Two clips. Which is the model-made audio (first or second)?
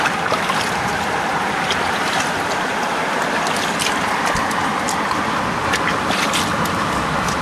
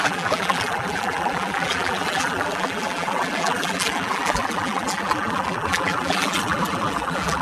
second